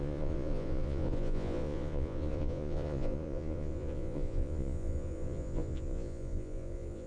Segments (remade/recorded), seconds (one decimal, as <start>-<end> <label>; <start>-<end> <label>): 0.0-7.1 remade